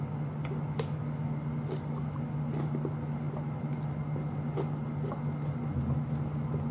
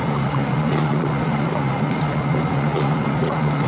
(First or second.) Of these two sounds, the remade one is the second